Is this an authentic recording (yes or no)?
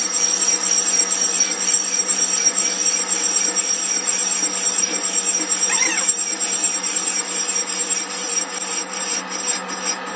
yes